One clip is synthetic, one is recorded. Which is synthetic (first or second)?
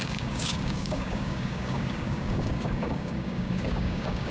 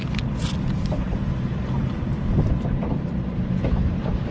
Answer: first